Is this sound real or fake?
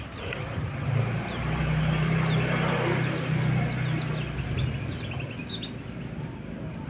real